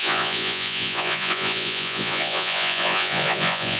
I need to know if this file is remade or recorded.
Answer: remade